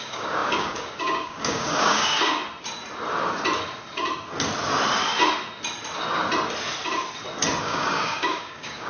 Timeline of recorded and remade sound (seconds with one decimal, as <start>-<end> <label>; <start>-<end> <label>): 0.0-2.4 remade; 2.4-7.6 recorded; 7.6-8.9 remade